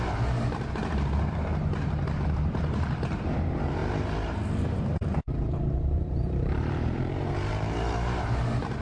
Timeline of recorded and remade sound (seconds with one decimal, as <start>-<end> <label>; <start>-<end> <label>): 0.0-8.8 remade